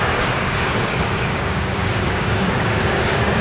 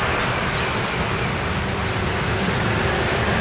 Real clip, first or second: second